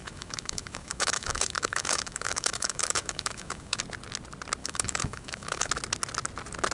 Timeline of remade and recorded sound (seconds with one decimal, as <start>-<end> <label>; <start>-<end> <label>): 0.0-3.8 remade; 3.8-4.6 recorded; 4.6-5.7 remade; 5.7-6.7 recorded